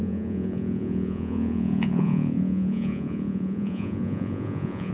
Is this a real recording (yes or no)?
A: no